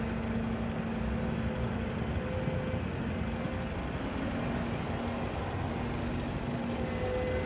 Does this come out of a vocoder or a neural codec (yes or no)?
no